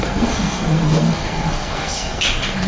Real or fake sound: fake